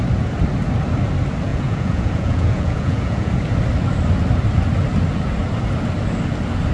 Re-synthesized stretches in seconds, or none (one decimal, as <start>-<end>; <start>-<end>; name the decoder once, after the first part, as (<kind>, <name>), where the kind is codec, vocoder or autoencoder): 1.5-3.3 (vocoder, Vocos)